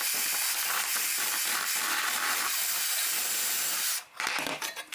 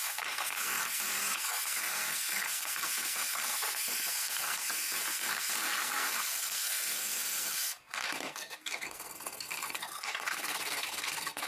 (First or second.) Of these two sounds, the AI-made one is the second